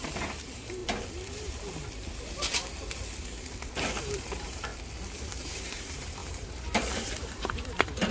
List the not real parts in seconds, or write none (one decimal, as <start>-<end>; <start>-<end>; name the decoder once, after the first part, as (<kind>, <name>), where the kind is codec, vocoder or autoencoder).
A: 0.0-0.8 (vocoder, BigVGAN v2); 4.0-4.7; 5.4-8.1

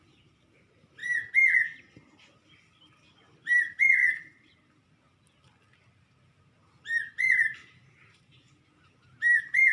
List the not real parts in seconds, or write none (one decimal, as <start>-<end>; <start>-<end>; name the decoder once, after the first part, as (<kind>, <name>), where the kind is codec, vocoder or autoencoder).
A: 4.0-4.7 (vocoder, BigVGAN v2); 7.1-8.5

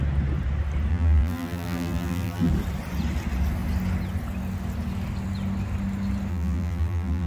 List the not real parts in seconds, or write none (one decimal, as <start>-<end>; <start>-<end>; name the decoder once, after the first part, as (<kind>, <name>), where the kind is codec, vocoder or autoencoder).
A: 0.9-2.5 (vocoder, BigVGAN v2); 6.3-7.3

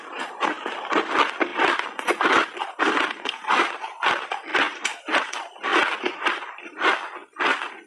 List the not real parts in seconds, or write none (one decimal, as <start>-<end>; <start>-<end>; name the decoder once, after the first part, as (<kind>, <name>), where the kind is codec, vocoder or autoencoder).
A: 4.5-5.3 (vocoder, BigVGAN v2)

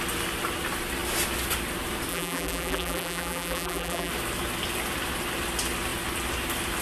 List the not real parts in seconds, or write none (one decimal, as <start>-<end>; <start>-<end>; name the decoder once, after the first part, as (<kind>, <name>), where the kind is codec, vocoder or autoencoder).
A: 2.1-4.1 (vocoder, BigVGAN v2)

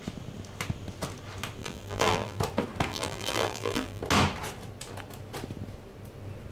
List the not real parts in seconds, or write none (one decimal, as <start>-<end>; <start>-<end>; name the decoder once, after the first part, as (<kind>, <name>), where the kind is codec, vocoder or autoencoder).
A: 1.6-2.4 (vocoder, BigVGAN v2); 2.9-4.0